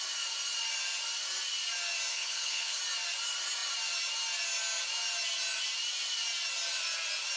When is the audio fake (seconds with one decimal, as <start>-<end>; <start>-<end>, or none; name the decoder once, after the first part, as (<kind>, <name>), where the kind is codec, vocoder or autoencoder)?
2.1-2.8 (codec, HILCodec)